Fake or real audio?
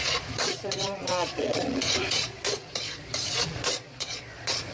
fake